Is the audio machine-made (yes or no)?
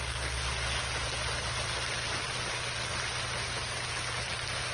no